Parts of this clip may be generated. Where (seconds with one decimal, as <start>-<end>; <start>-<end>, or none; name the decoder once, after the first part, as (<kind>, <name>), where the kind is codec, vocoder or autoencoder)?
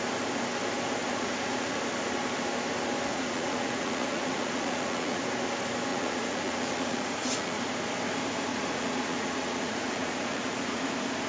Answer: 1.0-1.8 (vocoder, Vocos); 3.1-5.2; 5.9-7.6; 8.5-10.9